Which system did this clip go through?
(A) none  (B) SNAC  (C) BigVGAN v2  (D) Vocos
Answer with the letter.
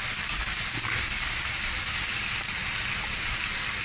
A